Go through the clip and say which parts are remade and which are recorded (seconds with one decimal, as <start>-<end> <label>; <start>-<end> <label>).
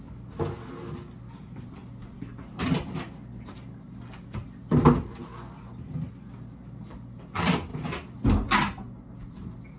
0.0-9.8 recorded